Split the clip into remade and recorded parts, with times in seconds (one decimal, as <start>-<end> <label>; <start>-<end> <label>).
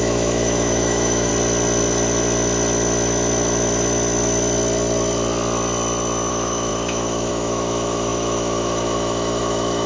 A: 0.0-1.3 remade; 1.3-6.3 recorded; 6.3-9.9 remade